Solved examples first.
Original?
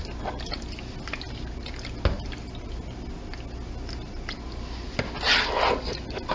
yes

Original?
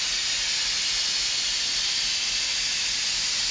yes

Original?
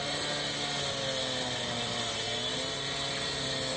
yes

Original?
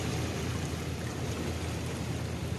yes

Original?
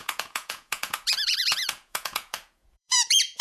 no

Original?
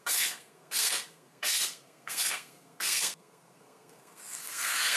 no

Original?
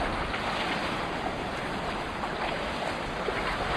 yes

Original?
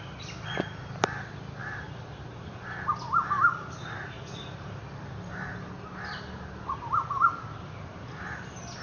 yes